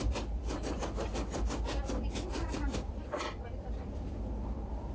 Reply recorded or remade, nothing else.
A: recorded